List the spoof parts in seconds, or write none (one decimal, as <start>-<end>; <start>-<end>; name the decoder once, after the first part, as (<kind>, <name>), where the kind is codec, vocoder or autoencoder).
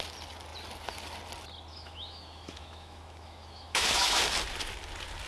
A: 1.7-4.2 (autoencoder, DAC-VAE)